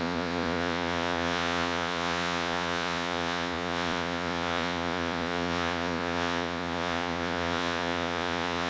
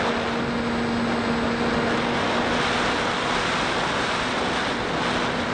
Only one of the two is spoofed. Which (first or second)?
first